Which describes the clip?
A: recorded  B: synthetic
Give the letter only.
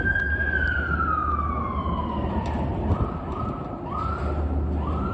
A